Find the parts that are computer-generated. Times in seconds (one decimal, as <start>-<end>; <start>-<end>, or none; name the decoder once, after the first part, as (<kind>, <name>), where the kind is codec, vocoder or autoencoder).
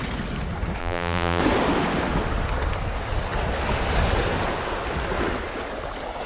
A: 0.8-1.4 (vocoder, BigVGAN v2)